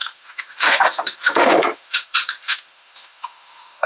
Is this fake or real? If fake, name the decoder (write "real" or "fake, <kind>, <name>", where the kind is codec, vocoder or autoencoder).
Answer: fake, autoencoder, DAC-VAE